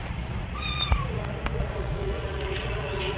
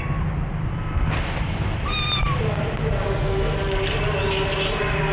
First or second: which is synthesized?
first